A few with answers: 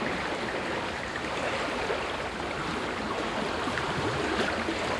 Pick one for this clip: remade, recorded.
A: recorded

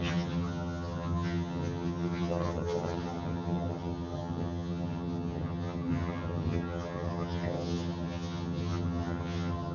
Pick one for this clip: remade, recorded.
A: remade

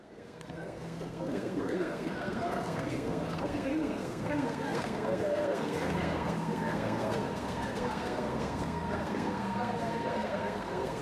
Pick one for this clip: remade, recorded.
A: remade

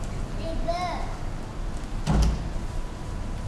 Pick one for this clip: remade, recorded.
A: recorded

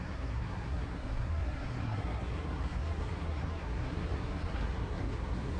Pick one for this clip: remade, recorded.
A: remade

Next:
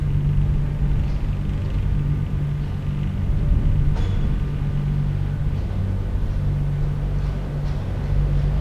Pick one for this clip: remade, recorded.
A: recorded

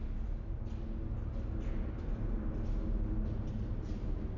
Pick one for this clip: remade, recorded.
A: recorded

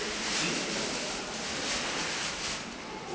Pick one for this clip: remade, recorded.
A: recorded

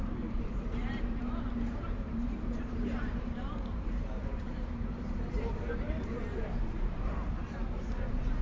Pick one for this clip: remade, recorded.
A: remade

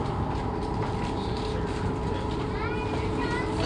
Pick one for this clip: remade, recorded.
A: recorded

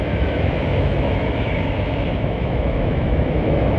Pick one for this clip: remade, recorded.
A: remade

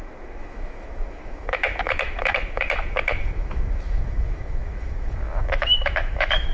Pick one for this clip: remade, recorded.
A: remade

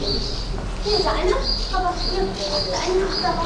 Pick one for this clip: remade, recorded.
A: recorded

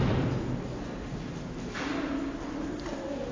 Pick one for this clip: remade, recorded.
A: recorded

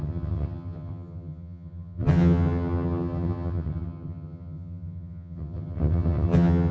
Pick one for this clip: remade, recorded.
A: remade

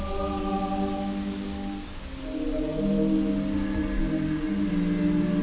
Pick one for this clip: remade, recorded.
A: recorded